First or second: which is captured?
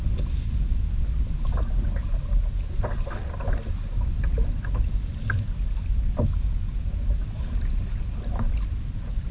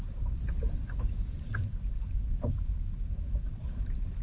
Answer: first